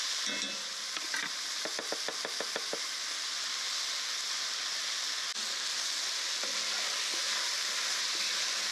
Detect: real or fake real